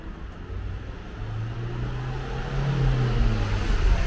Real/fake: real